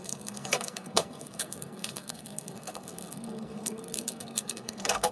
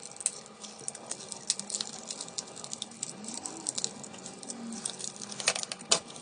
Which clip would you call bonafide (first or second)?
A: second